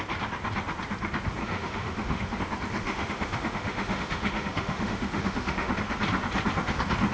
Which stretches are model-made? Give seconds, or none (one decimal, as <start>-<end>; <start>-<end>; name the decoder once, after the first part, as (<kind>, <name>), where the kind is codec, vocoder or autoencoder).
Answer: 1.4-2.4 (autoencoder, DAC-VAE); 2.8-5.7